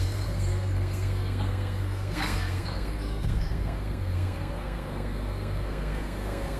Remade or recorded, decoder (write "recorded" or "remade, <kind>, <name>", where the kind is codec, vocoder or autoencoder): remade, codec, SNAC